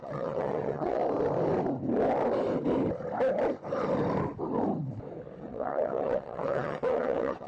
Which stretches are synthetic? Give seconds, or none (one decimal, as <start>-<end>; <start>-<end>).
0.0-1.0; 5.4-7.5